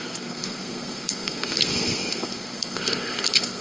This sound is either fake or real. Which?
fake